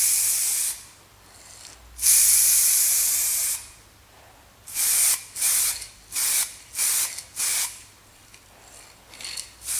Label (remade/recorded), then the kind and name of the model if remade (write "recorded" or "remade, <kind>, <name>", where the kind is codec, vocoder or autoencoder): recorded